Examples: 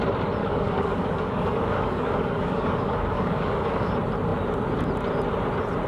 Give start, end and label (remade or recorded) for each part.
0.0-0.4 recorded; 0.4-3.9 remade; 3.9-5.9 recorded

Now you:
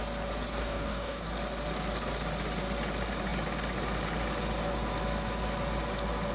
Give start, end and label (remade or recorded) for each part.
0.0-0.6 recorded; 0.6-1.3 remade; 1.3-6.3 recorded

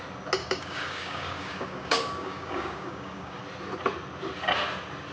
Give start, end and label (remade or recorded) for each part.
0.0-0.4 recorded; 0.4-3.4 remade; 3.4-5.1 recorded

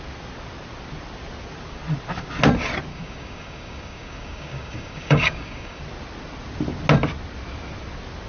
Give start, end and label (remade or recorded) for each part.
0.0-2.9 recorded; 2.9-5.8 remade; 5.8-8.3 recorded

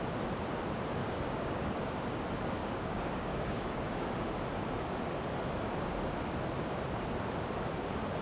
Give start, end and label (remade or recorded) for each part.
0.0-1.0 recorded; 1.0-1.8 remade; 1.8-2.6 recorded; 2.6-4.3 remade; 4.3-8.2 recorded

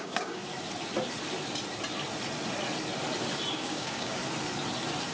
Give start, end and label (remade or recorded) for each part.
0.0-0.4 remade; 0.4-3.5 recorded; 3.5-4.2 remade; 4.2-5.1 recorded